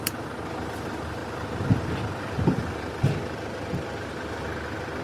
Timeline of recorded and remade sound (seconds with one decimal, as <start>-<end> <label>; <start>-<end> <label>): 0.0-5.0 recorded